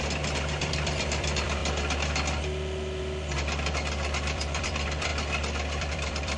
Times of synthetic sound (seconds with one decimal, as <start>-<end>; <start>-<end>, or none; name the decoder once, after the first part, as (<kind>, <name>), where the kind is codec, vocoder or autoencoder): 0.0-1.6 (vocoder, BigVGAN v2); 3.0-6.4